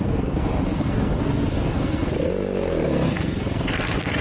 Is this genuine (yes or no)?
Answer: no